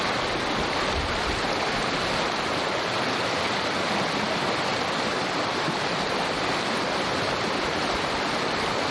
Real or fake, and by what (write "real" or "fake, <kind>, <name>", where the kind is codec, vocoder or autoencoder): real